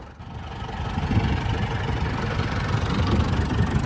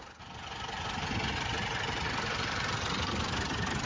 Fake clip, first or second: second